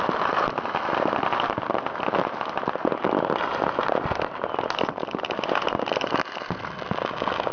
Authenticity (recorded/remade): recorded